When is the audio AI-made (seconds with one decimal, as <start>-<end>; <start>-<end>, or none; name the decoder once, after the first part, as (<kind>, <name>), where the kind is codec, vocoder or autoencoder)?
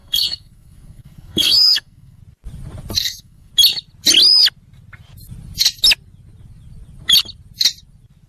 0.0-2.2 (codec, SNAC); 3.0-3.5